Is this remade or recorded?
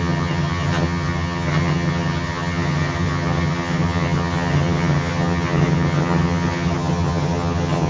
remade